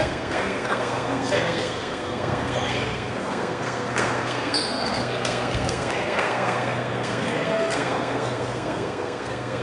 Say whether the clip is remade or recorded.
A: remade